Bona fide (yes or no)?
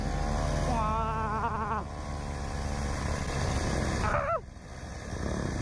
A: yes